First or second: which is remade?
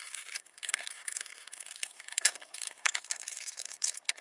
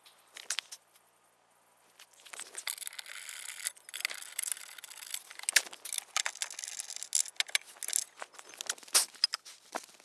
first